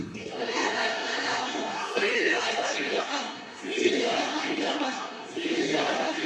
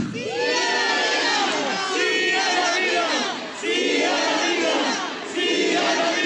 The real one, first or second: second